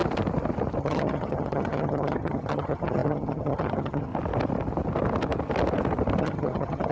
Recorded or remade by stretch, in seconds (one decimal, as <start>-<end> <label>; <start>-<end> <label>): 0.0-0.8 recorded; 0.8-4.1 remade; 4.1-6.2 recorded; 6.2-6.9 remade